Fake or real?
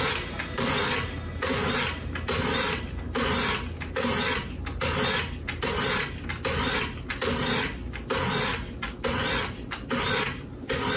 real